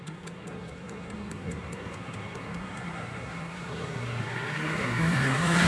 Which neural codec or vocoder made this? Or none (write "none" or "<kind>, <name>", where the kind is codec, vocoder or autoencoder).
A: codec, SNAC